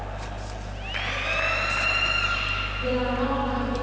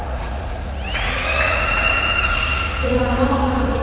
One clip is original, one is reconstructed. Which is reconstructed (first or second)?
second